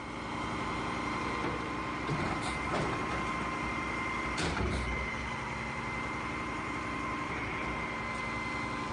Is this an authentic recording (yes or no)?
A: no